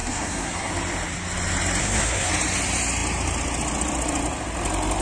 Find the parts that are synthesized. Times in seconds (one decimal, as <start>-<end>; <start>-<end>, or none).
0.0-0.7; 1.8-2.3